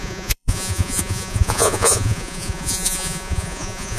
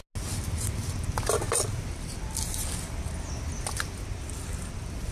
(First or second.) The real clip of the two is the second